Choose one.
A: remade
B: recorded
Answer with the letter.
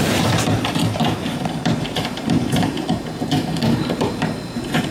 A